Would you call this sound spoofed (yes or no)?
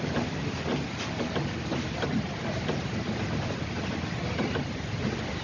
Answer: no